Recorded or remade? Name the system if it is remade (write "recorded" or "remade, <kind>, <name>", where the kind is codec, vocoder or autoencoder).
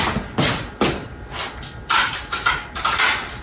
recorded